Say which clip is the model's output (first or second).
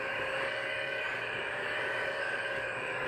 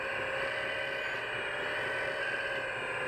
first